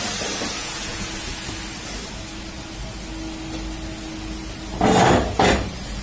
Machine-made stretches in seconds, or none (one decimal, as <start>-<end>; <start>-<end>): 0.6-1.1